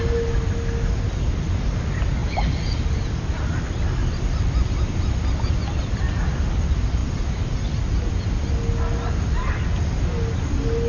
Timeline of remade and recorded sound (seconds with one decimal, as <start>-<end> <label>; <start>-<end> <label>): 0.0-4.0 recorded; 4.0-5.5 remade; 5.5-7.0 recorded; 7.0-8.1 remade; 8.1-10.9 recorded